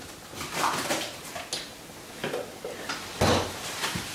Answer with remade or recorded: recorded